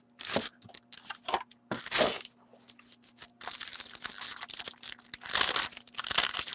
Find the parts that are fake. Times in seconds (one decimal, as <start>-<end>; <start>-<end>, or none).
none

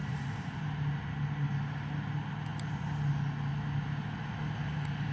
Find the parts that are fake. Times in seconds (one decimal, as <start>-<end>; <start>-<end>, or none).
0.0-0.6

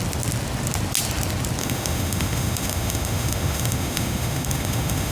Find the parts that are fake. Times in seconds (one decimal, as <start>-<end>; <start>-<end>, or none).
1.6-5.1

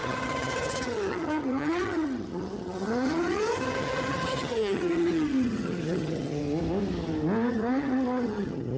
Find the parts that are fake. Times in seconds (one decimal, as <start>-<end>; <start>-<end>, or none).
0.0-6.4; 7.5-8.8

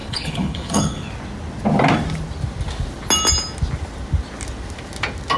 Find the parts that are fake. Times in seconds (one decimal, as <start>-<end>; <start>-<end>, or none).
0.0-1.1

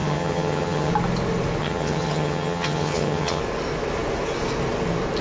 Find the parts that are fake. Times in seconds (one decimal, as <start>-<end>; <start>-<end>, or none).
0.0-0.9; 1.6-3.4

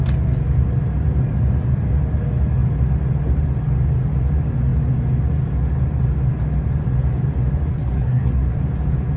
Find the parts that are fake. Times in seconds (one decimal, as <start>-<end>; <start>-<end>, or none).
7.7-8.6